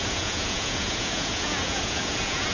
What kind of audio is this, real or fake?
fake